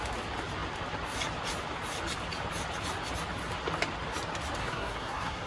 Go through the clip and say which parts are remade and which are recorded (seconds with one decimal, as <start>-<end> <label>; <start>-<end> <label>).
0.0-4.6 recorded; 4.6-5.5 remade

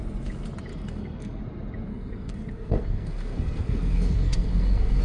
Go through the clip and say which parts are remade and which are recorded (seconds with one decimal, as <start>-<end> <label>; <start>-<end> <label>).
0.0-0.7 recorded; 0.7-1.4 remade; 1.4-1.9 recorded; 1.9-5.0 remade

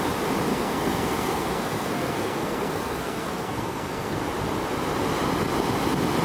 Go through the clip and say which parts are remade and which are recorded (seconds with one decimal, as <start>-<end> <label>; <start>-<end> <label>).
0.0-0.5 recorded; 0.5-4.2 remade; 4.2-6.2 recorded

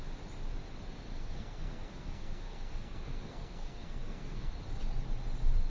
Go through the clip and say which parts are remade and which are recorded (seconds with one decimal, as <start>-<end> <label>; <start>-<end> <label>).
0.0-1.1 recorded; 1.1-4.5 remade; 4.5-5.7 recorded